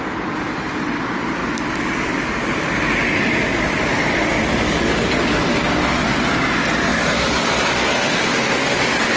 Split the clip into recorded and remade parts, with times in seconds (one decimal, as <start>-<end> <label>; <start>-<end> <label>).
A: 0.0-9.2 recorded